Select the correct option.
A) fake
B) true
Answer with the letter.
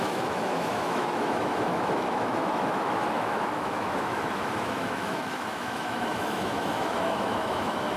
A